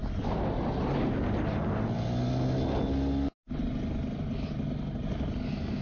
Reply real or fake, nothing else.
real